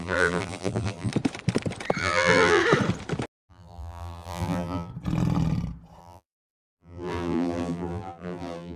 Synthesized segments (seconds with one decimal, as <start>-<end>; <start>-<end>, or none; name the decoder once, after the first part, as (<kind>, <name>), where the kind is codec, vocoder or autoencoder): 0.0-1.1 (vocoder, BigVGAN v2); 2.0-2.6; 3.5-4.9; 6.0-8.8